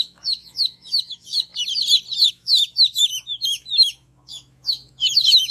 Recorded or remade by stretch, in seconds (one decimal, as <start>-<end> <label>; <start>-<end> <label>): 0.0-1.5 remade; 1.5-2.3 recorded; 2.3-5.5 remade